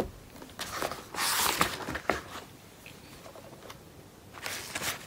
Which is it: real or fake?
real